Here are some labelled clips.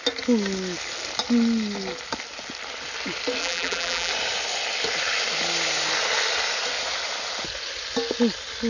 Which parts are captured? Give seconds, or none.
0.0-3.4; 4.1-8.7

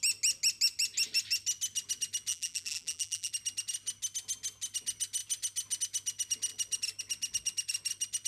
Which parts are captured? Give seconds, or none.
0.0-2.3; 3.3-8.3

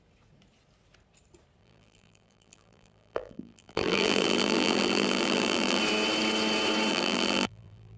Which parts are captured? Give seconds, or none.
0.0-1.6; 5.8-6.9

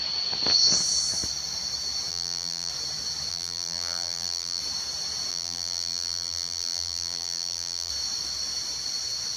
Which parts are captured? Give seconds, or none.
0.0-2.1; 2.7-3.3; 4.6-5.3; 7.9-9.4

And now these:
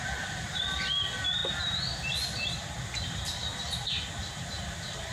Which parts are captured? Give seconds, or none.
1.4-4.5

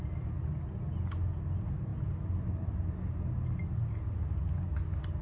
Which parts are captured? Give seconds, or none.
0.0-5.2

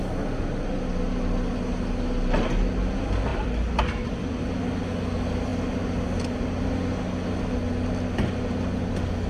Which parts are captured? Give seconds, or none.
0.0-3.3; 4.4-9.3